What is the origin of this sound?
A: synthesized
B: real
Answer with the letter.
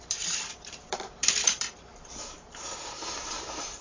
A